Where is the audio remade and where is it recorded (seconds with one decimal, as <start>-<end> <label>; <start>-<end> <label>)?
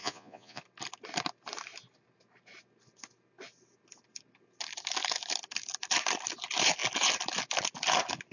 0.0-0.6 remade; 0.6-8.3 recorded